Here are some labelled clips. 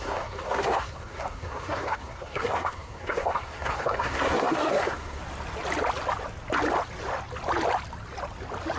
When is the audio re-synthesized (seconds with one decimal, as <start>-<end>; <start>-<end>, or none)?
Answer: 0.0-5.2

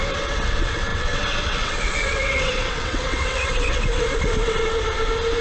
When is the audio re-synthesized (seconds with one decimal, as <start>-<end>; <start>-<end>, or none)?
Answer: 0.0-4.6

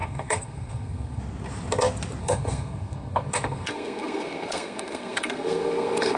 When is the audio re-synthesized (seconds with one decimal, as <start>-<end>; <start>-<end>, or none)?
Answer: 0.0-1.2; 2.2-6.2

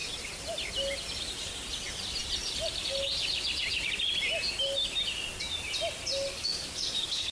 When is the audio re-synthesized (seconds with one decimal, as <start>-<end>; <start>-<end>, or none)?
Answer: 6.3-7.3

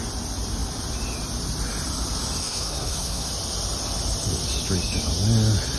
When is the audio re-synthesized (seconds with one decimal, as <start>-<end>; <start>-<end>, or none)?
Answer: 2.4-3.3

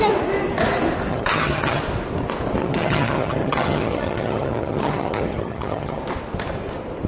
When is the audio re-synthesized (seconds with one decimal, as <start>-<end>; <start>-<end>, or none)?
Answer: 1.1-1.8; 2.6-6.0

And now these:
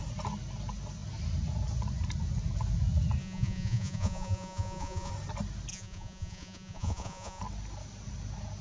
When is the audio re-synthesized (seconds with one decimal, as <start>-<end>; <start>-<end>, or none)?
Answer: 3.2-5.1; 5.7-7.4

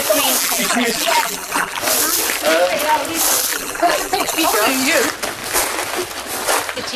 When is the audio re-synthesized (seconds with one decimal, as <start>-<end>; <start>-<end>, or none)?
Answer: 0.4-1.8; 3.5-4.4